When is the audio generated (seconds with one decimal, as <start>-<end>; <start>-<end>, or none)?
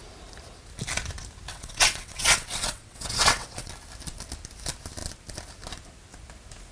1.5-3.7